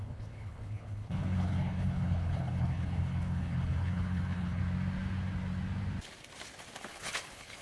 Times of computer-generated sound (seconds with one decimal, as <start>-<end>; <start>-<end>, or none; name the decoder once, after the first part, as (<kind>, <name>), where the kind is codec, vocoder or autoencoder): 0.0-4.6 (codec, HILCodec); 6.9-7.6